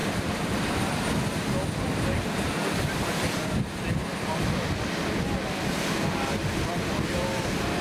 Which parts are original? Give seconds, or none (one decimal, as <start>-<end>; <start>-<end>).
0.7-7.8